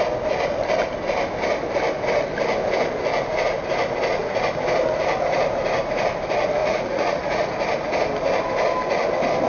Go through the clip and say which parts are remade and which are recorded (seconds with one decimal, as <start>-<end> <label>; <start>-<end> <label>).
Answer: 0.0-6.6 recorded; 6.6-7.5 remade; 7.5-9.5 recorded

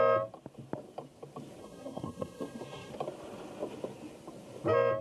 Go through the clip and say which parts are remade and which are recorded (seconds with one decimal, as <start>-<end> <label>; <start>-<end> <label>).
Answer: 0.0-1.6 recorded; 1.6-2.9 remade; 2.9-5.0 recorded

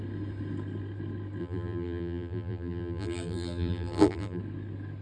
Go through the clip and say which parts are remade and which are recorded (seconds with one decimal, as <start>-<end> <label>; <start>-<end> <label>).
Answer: 0.0-1.4 recorded; 1.4-4.4 remade; 4.4-5.0 recorded

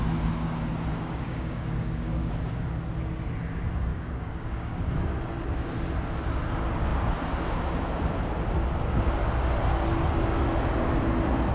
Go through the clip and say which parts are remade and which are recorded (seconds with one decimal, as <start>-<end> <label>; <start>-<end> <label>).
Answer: 0.0-0.9 recorded; 0.9-2.3 remade; 2.3-3.9 recorded; 3.9-4.9 remade; 4.9-11.5 recorded

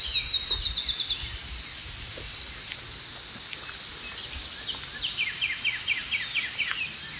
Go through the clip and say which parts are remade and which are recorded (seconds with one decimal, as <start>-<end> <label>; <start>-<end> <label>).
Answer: 0.0-0.8 remade; 0.8-5.0 recorded; 5.0-6.0 remade; 6.0-6.8 recorded; 6.8-7.2 remade

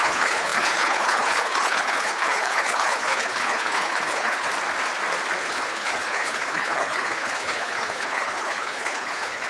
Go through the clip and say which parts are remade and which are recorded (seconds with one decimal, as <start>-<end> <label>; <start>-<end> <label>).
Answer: 0.0-4.5 remade; 4.5-5.4 recorded; 5.4-9.5 remade

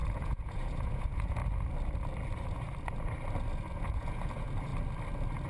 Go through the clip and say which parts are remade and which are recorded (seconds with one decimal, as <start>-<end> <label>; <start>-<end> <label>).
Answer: 0.0-1.4 remade; 1.4-3.7 recorded; 3.7-4.7 remade; 4.7-5.5 recorded